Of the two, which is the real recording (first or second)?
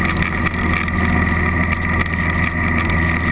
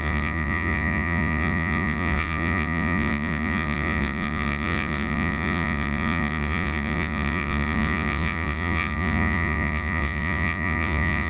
first